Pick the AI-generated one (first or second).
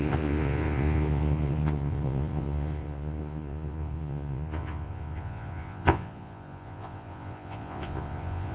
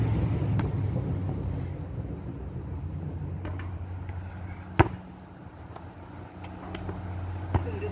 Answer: first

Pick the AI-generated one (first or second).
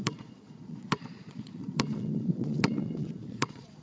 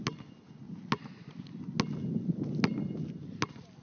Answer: first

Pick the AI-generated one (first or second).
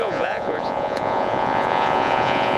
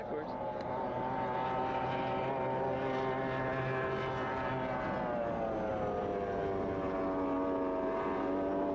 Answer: first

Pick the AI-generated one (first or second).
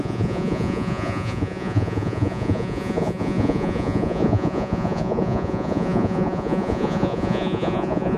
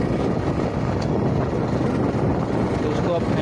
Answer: first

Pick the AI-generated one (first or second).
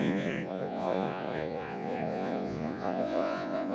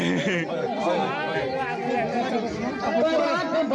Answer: first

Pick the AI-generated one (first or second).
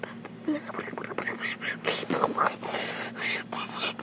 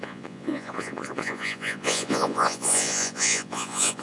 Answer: second